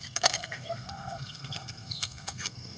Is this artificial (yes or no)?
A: yes